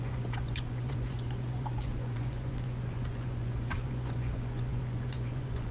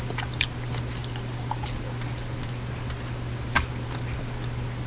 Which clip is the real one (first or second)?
second